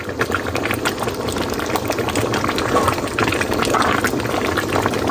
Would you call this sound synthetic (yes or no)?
no